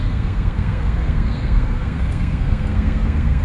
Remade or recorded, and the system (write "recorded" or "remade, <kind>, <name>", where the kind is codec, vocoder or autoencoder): remade, codec, SNAC